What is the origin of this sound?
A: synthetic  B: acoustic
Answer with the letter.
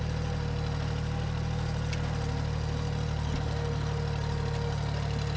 B